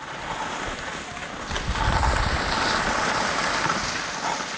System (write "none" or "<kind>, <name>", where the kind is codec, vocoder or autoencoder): none